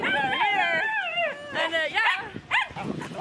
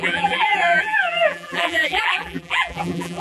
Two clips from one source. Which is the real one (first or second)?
first